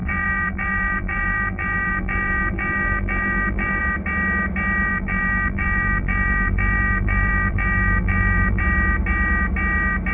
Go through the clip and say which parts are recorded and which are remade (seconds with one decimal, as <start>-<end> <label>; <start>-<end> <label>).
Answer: 0.0-3.8 remade; 3.8-4.9 recorded; 4.9-8.6 remade; 8.6-10.1 recorded